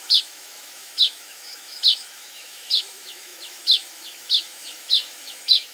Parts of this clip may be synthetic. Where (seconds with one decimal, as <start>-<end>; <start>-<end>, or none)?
0.0-5.7